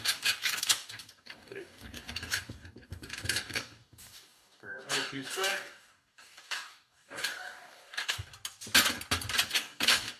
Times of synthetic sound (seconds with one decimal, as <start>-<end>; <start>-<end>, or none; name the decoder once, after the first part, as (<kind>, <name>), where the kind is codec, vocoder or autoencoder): 0.0-8.3 (codec, DAC); 9.5-10.2